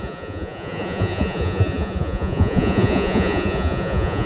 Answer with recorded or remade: remade